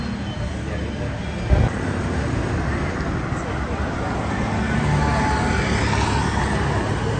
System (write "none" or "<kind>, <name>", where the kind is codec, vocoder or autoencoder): none